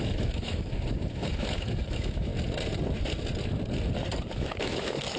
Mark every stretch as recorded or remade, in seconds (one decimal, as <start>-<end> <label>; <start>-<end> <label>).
0.0-2.3 remade; 2.3-4.3 recorded; 4.3-5.2 remade